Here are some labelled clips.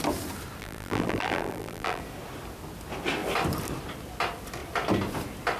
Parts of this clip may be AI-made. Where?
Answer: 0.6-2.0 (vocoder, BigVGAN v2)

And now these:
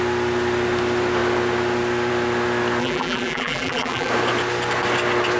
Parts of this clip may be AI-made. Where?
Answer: 2.8-4.1 (vocoder, BigVGAN v2)

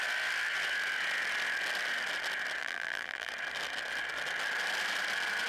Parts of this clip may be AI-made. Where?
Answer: 2.6-3.3 (vocoder, BigVGAN v2)

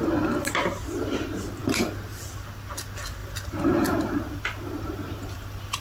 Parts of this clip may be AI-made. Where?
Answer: 1.6-2.3 (vocoder, BigVGAN v2); 3.2-5.8

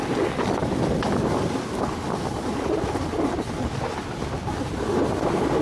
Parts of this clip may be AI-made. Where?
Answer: none

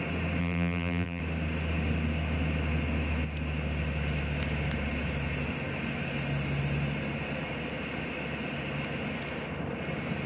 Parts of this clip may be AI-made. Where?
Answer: 0.4-1.2 (vocoder, BigVGAN v2)

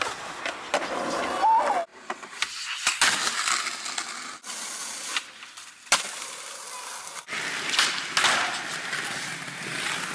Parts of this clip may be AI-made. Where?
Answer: 1.9-4.0 (vocoder, BigVGAN v2); 4.8-8.1

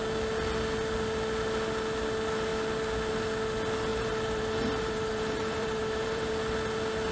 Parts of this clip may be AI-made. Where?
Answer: 3.9-6.3 (vocoder, BigVGAN v2)